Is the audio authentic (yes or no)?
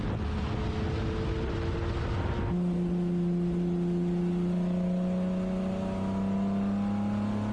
yes